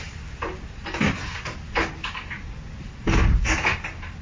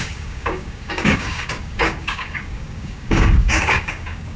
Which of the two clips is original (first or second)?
first